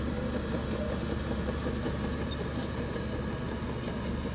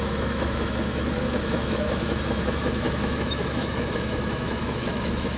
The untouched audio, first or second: first